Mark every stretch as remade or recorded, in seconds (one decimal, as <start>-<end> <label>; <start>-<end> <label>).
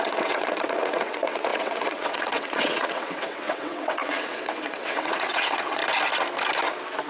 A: 0.0-5.8 remade; 5.8-7.1 recorded